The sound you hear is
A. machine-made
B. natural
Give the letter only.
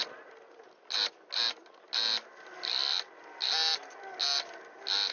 B